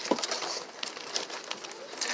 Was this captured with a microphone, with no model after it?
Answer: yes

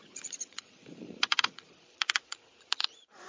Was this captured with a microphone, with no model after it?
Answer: no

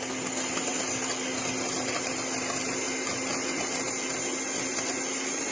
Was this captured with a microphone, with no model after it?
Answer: yes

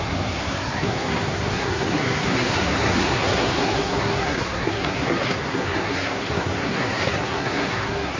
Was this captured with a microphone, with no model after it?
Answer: no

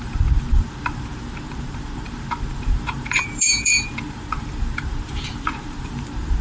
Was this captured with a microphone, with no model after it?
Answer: no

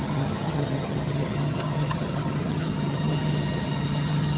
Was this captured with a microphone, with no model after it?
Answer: no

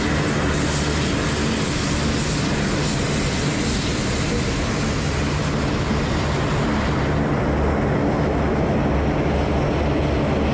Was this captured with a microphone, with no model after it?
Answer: yes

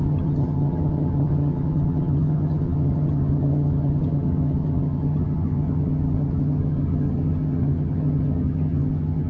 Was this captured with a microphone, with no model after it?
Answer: no